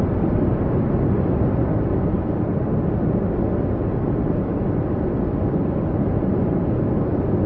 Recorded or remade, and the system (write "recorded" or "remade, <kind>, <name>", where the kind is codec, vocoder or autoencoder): recorded